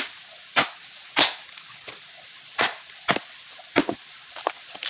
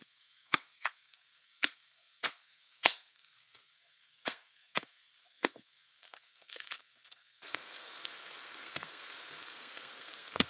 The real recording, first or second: first